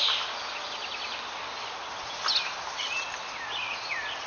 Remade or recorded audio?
recorded